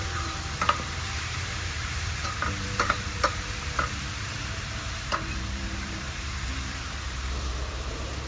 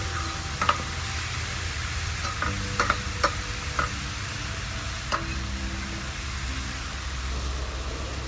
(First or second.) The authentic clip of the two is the second